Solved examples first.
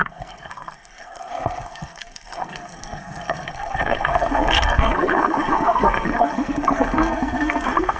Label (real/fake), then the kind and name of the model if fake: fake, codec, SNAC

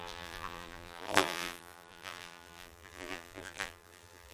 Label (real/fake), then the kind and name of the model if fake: fake, vocoder, BigVGAN v2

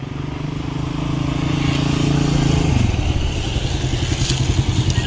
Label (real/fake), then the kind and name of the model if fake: real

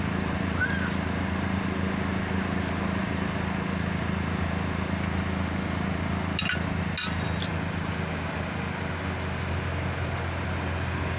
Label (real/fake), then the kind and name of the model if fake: real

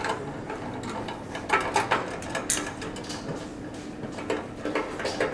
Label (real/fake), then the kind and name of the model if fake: real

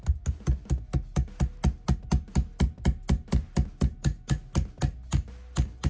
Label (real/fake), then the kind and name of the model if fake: real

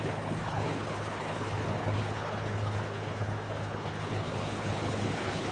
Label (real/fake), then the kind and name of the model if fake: fake, codec, HILCodec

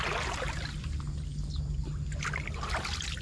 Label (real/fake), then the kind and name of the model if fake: real